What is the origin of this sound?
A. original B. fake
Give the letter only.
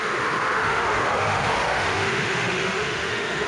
B